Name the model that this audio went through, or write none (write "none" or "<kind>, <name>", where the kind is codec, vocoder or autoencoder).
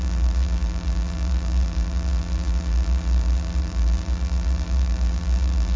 vocoder, BigVGAN v2